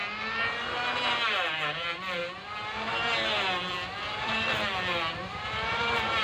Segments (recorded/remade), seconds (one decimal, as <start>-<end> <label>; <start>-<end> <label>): 0.0-1.5 recorded; 1.5-2.2 remade; 2.2-3.7 recorded; 3.7-6.2 remade